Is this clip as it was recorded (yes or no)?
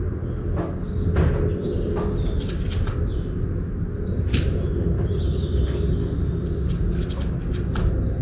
yes